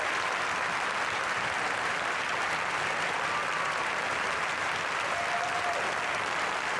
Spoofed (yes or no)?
no